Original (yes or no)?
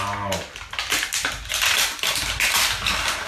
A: yes